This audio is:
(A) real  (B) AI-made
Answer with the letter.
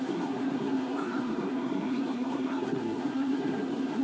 B